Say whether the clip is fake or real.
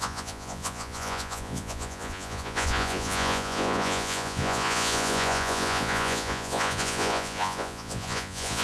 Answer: fake